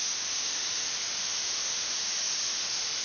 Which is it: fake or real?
fake